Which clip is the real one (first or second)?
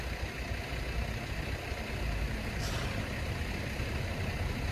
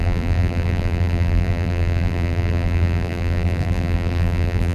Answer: first